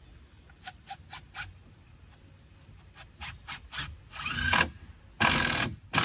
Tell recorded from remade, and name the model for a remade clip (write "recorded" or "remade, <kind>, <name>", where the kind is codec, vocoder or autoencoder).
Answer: recorded